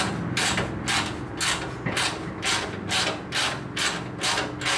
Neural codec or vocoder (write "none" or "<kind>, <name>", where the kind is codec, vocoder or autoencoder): none